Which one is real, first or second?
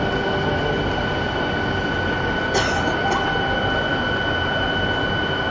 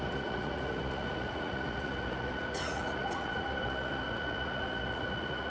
first